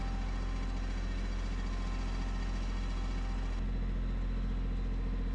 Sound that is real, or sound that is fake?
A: real